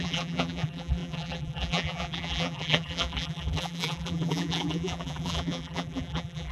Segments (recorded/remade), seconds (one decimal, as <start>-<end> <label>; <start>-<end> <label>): 0.0-6.5 remade